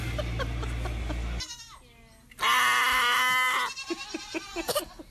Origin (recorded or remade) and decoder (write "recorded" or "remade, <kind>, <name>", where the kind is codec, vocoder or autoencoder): recorded